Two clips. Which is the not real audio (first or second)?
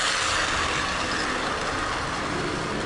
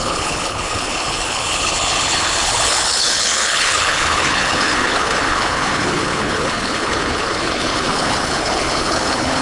second